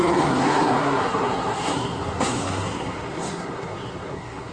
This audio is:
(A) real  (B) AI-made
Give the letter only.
B